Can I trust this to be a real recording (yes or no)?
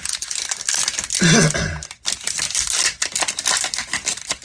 yes